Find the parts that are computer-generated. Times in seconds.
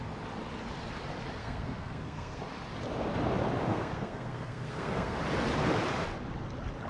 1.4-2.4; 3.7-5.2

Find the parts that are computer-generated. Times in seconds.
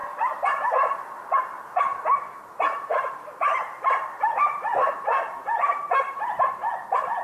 2.9-7.2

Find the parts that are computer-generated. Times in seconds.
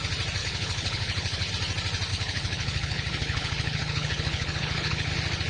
0.4-1.5; 2.1-5.1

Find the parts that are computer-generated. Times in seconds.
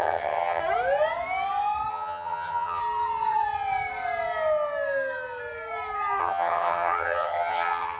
0.0-0.6; 1.9-2.8; 6.2-8.0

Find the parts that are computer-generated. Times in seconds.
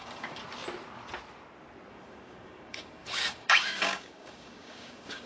0.0-0.4; 1.9-5.3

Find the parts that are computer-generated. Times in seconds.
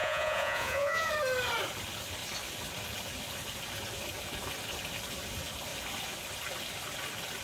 0.0-1.1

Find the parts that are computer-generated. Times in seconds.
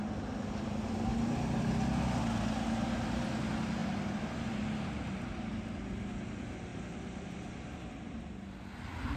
none